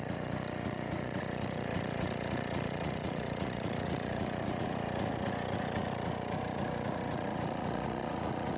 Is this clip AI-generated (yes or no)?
yes